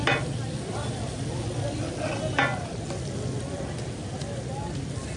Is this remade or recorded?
recorded